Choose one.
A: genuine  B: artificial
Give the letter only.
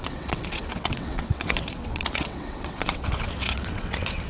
B